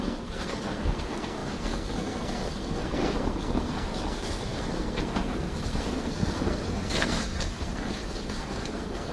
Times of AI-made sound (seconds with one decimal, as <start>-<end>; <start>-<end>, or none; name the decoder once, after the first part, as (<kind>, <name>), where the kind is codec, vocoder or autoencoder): 0.0-9.1 (codec, SNAC)